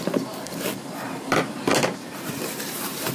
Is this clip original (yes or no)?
yes